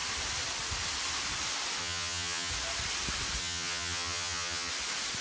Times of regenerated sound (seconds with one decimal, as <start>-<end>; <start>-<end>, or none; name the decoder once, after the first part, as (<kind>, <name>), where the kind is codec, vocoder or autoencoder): 1.8-2.5 (vocoder, HiFi-GAN); 3.4-4.7